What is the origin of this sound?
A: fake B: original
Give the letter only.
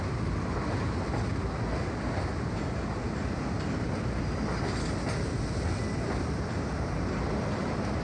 B